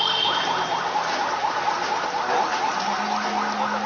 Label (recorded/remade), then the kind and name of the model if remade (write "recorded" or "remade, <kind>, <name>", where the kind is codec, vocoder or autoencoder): recorded